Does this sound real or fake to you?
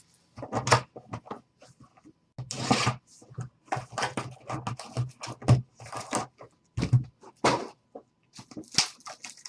real